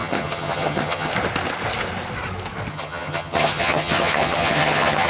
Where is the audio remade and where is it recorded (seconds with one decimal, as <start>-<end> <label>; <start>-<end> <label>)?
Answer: 0.0-1.1 remade; 1.1-2.7 recorded; 2.7-5.1 remade